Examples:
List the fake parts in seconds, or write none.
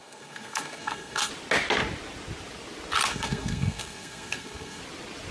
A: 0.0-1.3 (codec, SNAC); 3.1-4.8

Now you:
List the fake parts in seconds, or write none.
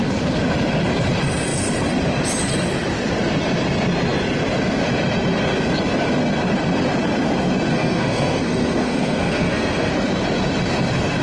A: 7.7-9.9 (codec, SNAC)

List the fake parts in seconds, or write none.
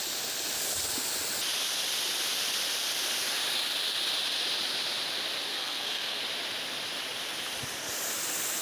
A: 5.5-6.2 (codec, SNAC)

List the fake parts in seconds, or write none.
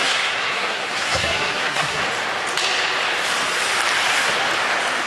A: 0.0-2.0 (codec, SNAC)